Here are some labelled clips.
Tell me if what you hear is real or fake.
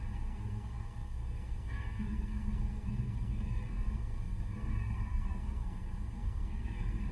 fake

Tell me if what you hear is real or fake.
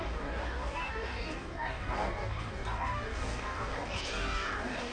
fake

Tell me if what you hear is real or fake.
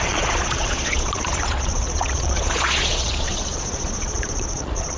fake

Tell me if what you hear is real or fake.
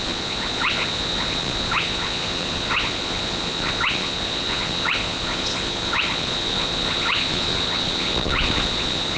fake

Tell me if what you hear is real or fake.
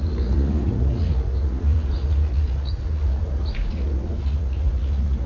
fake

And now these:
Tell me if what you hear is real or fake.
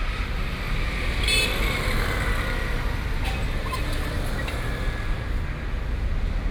real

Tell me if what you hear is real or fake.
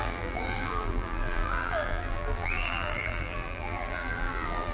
fake